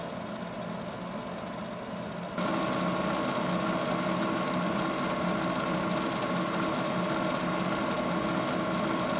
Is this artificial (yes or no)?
no